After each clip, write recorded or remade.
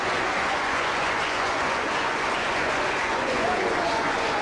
remade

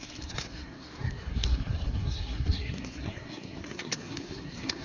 remade